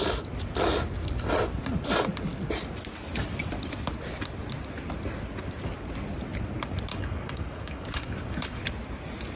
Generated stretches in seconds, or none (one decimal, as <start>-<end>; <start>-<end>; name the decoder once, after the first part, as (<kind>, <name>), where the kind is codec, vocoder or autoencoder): 6.9-8.6 (codec, DAC)

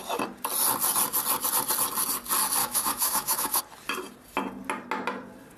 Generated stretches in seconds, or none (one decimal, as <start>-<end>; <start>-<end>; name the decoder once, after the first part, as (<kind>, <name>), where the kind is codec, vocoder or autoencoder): 2.6-3.6 (autoencoder, DAC-VAE)

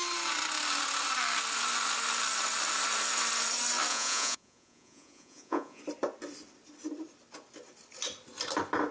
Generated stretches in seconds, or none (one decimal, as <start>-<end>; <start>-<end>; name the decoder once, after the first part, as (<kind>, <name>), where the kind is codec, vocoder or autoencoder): 3.9-5.8 (vocoder, Vocos)

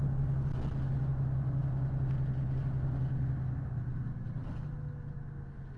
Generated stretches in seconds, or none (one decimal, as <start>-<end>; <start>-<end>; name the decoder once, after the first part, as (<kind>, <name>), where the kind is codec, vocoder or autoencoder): none

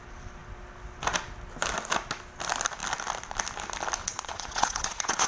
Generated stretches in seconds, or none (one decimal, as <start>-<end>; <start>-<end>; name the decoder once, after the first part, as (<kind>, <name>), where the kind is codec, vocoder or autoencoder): 4.0-5.3 (vocoder, Vocos)